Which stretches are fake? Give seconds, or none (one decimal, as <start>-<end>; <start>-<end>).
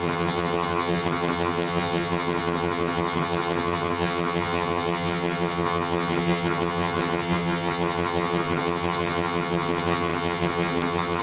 0.0-11.2